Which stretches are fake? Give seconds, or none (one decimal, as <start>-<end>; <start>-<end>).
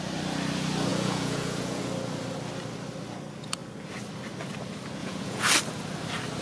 0.9-1.8; 5.0-5.5